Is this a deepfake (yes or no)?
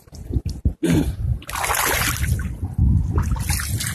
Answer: no